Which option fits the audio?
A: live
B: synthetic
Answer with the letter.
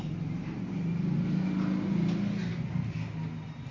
A